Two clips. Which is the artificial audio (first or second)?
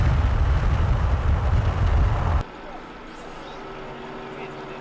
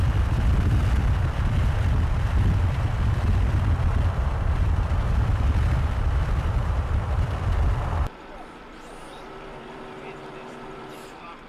second